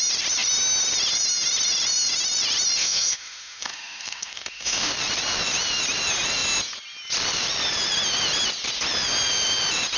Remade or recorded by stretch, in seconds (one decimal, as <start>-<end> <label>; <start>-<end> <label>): 0.0-2.8 recorded; 2.8-4.9 remade; 4.9-10.0 recorded